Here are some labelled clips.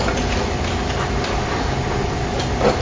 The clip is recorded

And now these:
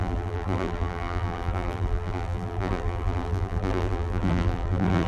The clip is remade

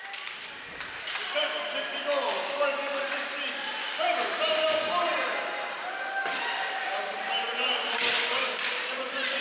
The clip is recorded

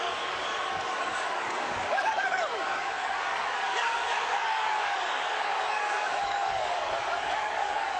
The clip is remade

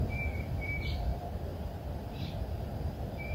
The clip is remade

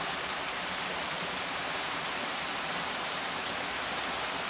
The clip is remade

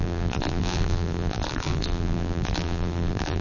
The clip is remade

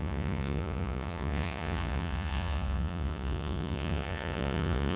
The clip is remade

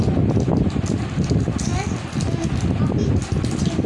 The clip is recorded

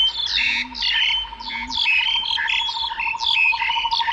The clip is recorded